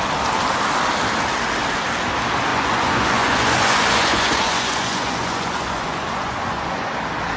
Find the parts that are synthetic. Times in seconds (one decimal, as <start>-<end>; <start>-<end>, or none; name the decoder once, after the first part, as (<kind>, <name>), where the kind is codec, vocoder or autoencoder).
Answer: 2.5-6.9 (vocoder, Vocos)